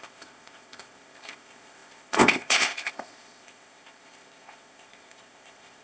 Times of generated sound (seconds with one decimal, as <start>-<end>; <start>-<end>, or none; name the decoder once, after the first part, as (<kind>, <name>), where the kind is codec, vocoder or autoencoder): 0.0-5.8 (codec, ZipCodec)